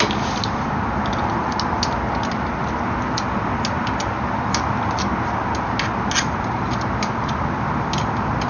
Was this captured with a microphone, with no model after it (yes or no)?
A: yes